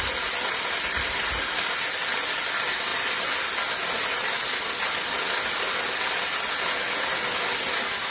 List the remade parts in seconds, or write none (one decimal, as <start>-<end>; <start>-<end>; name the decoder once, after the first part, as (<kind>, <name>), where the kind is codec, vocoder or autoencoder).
none